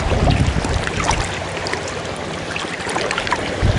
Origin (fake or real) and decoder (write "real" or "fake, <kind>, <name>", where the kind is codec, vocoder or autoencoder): real